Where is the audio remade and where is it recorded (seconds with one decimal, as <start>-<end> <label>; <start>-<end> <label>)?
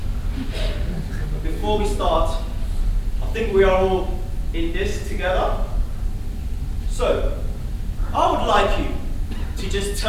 0.0-1.6 recorded; 1.6-4.0 remade; 4.0-4.9 recorded; 4.9-9.3 remade; 9.3-10.1 recorded